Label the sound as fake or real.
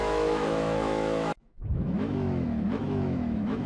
fake